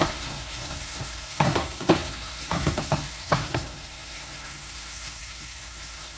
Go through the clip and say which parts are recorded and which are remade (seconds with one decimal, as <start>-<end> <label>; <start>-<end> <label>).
0.0-6.2 remade